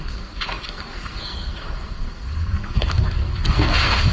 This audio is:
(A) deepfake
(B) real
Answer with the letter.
A